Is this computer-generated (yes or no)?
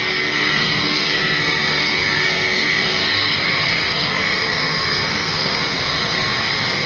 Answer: yes